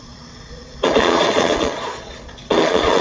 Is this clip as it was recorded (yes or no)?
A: no